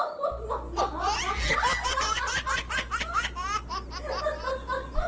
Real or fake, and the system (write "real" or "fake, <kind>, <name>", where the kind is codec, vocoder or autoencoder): real